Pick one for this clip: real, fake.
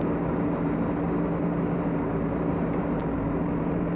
real